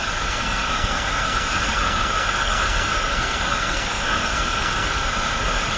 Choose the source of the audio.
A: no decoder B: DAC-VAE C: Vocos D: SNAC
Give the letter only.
D